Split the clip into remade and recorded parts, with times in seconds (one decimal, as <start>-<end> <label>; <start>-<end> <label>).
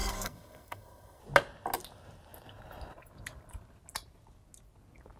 0.0-1.2 remade; 1.2-5.2 recorded